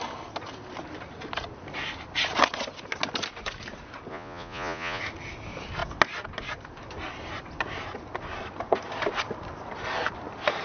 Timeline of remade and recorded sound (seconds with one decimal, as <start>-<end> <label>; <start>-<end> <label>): 0.0-4.1 recorded; 4.1-5.0 remade; 5.0-10.6 recorded